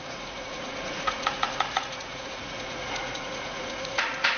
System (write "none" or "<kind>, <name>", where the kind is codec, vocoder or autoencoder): vocoder, Vocos